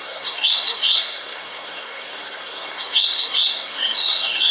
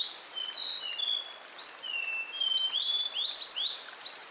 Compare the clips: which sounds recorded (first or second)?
second